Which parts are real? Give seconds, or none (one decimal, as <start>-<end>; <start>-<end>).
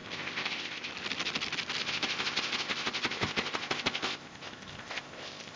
0.9-1.8